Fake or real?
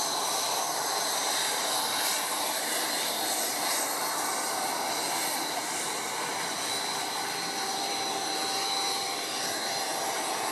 fake